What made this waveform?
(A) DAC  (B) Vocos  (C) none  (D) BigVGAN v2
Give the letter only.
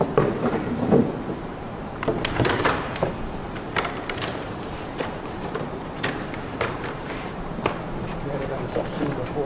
D